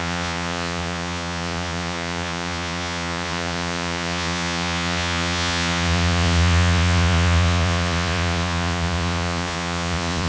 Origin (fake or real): fake